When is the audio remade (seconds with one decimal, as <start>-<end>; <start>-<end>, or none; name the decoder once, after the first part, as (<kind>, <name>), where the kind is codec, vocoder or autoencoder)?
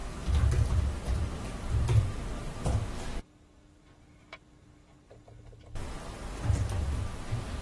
none